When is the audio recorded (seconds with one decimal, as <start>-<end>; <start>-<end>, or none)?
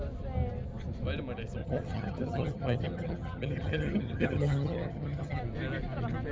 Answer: 0.0-1.6; 5.4-6.3